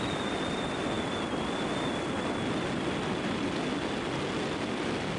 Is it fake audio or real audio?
real